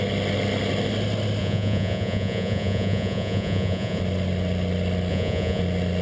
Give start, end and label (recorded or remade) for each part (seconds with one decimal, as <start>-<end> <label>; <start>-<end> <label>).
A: 0.0-1.4 recorded; 1.4-4.0 remade; 4.0-5.1 recorded; 5.1-5.6 remade; 5.6-6.0 recorded